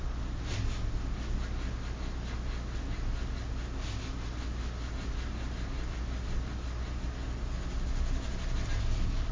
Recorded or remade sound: recorded